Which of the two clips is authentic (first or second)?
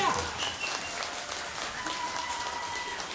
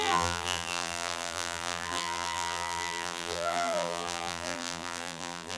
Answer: first